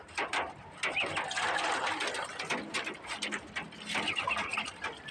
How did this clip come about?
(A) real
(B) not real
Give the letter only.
A